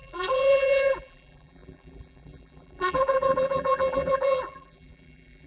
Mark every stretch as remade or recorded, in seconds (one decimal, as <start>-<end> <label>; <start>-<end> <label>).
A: 0.0-5.5 remade

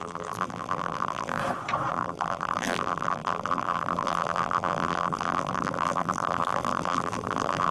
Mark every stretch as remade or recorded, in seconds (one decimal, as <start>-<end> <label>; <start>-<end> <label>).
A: 0.0-1.4 remade; 1.4-1.9 recorded; 1.9-7.7 remade

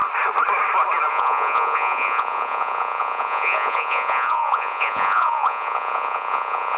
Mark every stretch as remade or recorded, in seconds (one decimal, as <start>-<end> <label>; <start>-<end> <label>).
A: 0.0-1.1 recorded; 1.1-6.8 remade

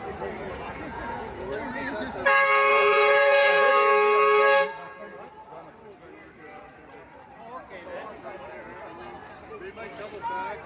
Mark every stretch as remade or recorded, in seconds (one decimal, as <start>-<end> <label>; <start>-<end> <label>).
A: 0.0-0.4 recorded; 0.4-1.8 remade; 1.8-2.7 recorded; 2.7-3.7 remade; 3.7-7.9 recorded; 7.9-8.6 remade; 8.6-10.7 recorded